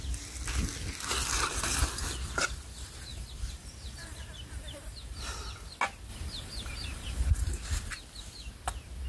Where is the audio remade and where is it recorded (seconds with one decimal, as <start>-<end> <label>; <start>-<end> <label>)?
0.0-3.1 recorded; 3.1-5.4 remade; 5.4-6.1 recorded; 6.1-7.3 remade; 7.3-9.1 recorded